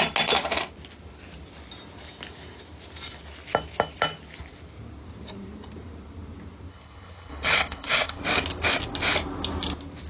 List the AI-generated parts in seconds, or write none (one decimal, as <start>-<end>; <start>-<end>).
6.7-8.2